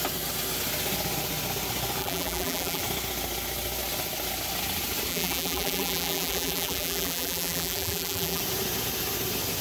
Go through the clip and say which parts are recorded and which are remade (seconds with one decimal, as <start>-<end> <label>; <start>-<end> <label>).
0.0-2.0 recorded; 2.0-2.8 remade; 2.8-5.1 recorded; 5.1-8.4 remade; 8.4-9.6 recorded